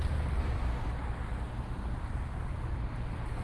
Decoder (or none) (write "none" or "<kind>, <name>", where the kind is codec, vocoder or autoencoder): none